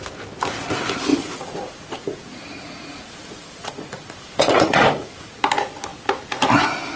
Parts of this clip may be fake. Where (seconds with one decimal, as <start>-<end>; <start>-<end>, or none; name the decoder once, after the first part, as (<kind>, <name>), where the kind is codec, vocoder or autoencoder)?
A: 1.1-5.3 (vocoder, Vocos)